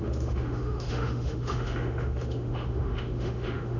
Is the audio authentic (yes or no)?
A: no